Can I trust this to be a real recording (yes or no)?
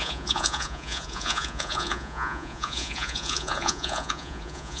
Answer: no